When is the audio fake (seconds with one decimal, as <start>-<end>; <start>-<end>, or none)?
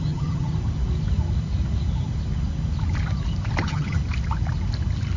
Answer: 0.0-0.5; 3.6-4.0